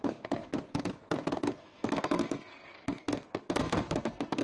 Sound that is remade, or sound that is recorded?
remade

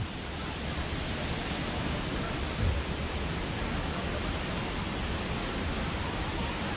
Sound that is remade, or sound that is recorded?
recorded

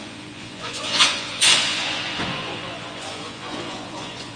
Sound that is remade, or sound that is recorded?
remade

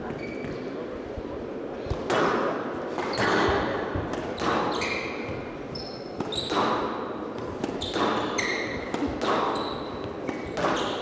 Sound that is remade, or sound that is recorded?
recorded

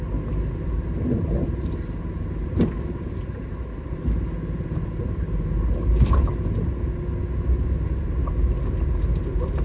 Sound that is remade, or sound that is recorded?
recorded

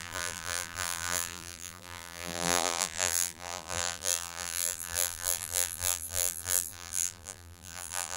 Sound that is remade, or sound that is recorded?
remade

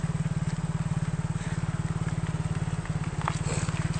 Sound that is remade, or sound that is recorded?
recorded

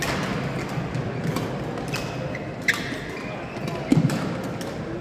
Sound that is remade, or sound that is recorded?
recorded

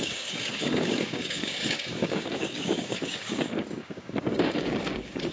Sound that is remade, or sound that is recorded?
remade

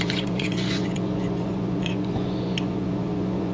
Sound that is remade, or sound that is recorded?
remade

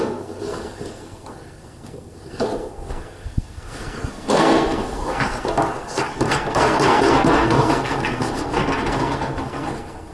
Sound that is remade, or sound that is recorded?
remade